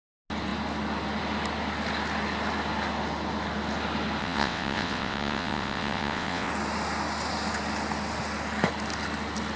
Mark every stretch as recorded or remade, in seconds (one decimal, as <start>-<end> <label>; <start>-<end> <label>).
0.0-4.2 recorded; 4.2-6.5 remade; 6.5-9.6 recorded